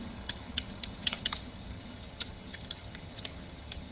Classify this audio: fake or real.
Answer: fake